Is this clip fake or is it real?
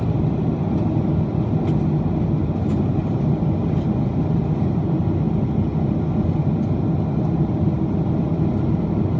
real